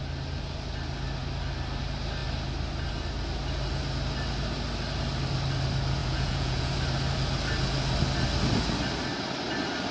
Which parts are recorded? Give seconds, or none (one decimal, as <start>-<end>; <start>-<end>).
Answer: 0.0-6.0; 6.7-9.9